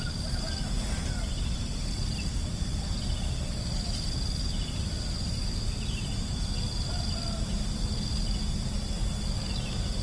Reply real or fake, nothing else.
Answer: real